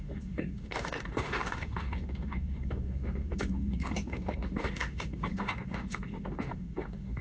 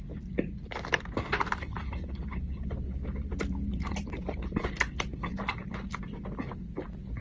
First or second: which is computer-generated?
first